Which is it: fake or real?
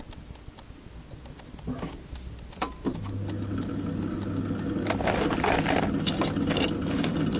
real